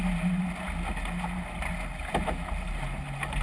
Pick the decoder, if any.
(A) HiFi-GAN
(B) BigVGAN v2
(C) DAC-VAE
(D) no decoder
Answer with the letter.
D